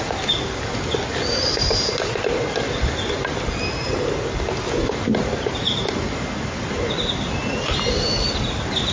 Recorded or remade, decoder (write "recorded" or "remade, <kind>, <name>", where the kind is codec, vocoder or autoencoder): recorded